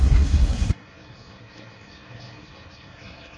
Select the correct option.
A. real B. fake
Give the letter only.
B